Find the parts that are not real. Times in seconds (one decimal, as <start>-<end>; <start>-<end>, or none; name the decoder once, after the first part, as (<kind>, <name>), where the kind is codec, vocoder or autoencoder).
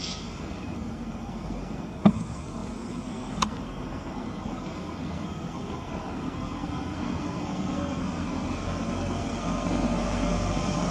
0.0-10.9 (codec, SNAC)